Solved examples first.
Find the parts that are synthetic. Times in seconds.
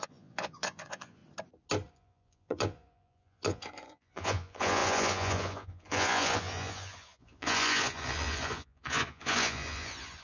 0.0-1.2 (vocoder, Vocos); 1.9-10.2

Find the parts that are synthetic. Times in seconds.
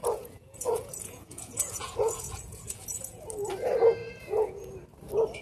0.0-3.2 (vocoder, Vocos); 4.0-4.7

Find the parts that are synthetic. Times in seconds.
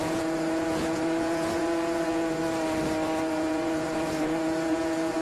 0.0-2.4 (vocoder, Vocos); 3.3-5.2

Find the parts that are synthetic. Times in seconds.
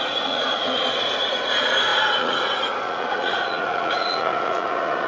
0.0-5.1 (vocoder, Vocos)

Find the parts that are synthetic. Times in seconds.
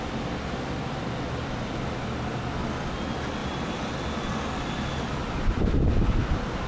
none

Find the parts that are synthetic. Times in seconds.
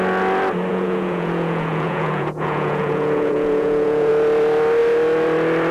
0.7-4.1 (vocoder, Vocos)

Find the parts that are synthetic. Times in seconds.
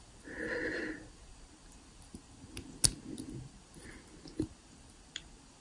none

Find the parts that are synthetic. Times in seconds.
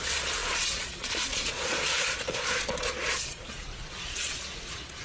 0.0-5.0 (vocoder, Vocos)